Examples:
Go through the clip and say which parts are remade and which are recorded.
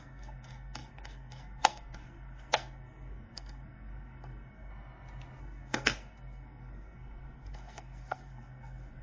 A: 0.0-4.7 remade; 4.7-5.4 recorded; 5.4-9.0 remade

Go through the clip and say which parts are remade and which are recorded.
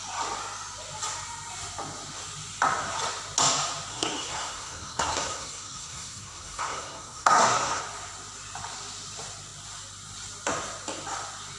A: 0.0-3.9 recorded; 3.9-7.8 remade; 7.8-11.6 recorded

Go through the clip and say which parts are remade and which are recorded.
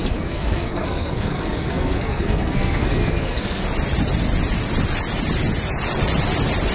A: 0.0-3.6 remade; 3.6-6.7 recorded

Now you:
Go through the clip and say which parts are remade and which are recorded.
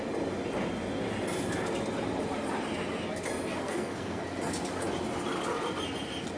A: 0.0-3.5 recorded; 3.5-4.2 remade; 4.2-6.4 recorded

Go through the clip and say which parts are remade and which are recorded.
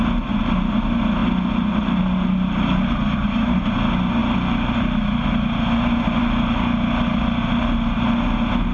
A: 0.0-8.7 recorded